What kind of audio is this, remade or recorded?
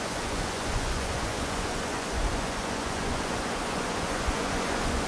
remade